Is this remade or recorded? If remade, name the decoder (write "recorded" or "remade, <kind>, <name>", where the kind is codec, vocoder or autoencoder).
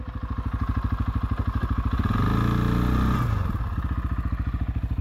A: recorded